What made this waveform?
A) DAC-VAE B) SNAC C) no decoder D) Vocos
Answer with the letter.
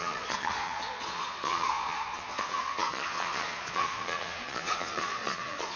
D